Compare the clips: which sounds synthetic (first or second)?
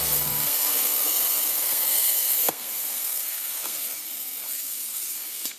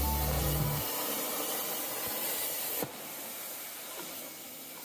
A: first